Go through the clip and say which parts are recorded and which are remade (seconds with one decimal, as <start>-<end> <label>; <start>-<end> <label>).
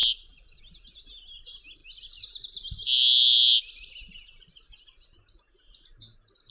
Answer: 0.0-6.5 recorded